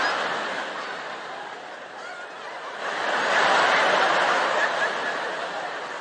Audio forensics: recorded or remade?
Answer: recorded